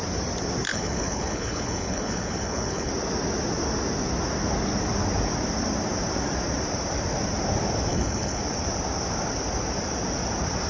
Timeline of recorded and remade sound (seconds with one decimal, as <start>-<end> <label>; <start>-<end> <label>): 0.0-0.7 recorded; 0.7-2.9 remade; 2.9-7.9 recorded; 7.9-8.4 remade; 8.4-10.7 recorded